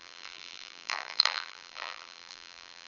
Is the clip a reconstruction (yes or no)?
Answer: yes